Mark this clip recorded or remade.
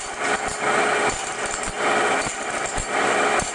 remade